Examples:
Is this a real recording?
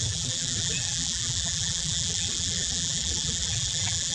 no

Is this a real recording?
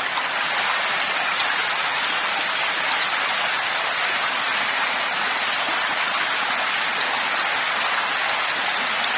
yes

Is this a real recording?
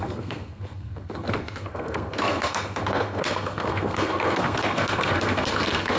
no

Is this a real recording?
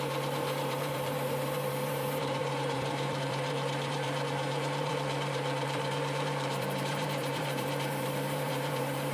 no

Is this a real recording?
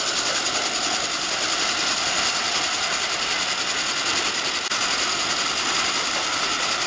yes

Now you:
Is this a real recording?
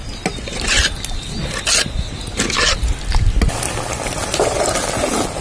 yes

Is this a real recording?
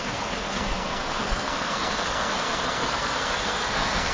no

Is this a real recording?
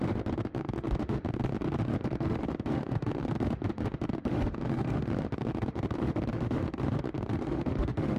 no